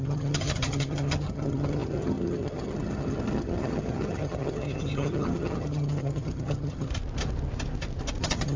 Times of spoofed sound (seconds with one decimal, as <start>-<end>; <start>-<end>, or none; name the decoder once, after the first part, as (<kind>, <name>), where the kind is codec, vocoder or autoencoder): 0.0-6.9 (vocoder, HiFi-GAN); 8.2-8.6